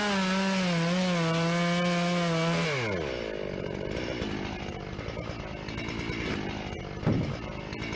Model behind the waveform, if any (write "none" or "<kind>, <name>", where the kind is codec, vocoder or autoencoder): none